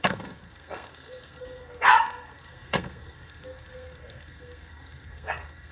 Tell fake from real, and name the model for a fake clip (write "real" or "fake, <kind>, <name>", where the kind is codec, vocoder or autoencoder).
fake, codec, SNAC